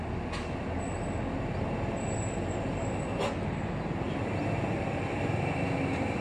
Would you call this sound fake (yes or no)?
no